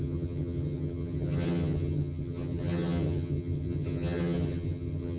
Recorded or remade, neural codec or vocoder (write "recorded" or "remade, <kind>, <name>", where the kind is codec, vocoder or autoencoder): remade, vocoder, HiFi-GAN